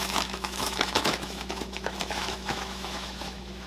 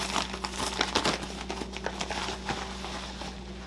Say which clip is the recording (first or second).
second